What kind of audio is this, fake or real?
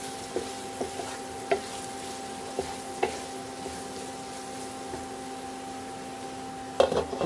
real